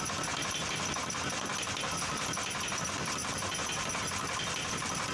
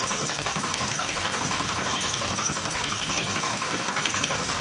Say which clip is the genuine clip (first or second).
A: first